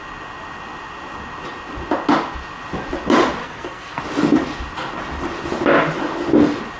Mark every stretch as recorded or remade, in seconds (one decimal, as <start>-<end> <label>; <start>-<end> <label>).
0.0-3.4 recorded; 3.4-4.0 remade; 4.0-6.8 recorded